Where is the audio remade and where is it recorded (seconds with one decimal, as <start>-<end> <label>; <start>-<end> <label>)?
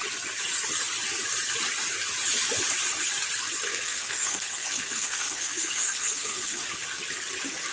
0.0-3.7 recorded; 3.7-6.6 remade; 6.6-7.7 recorded